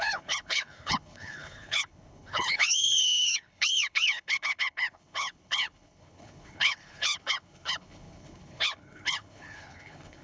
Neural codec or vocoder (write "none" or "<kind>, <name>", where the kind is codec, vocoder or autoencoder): codec, HILCodec